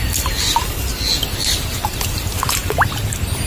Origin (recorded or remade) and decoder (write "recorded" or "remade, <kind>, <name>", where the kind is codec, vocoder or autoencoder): recorded